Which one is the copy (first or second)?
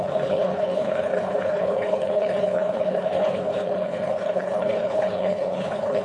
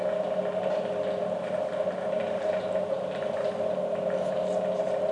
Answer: first